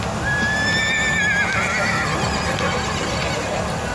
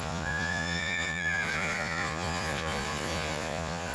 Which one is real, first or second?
first